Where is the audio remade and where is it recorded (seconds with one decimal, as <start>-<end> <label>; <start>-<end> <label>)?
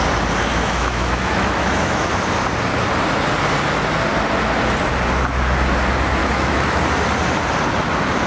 0.0-0.5 recorded; 0.5-2.1 remade; 2.1-6.2 recorded; 6.2-6.8 remade; 6.8-8.3 recorded